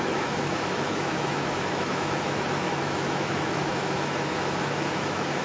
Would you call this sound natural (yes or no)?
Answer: no